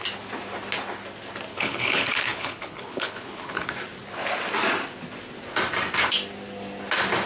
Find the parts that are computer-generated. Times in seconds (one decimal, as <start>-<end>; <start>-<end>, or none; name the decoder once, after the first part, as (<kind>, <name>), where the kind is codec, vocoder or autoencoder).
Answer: 1.5-3.7 (codec, HILCodec)